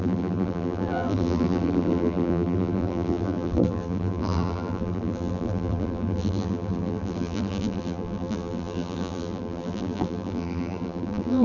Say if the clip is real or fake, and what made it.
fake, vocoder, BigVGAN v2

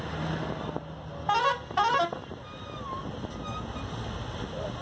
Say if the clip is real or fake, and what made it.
real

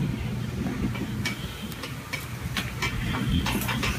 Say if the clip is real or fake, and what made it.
real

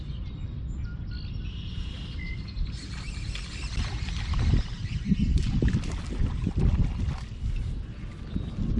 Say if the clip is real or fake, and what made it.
real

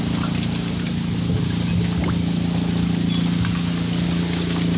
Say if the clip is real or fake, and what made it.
real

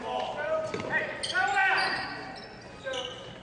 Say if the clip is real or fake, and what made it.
real